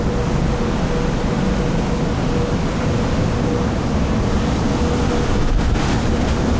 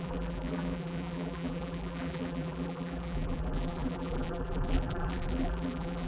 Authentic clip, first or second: first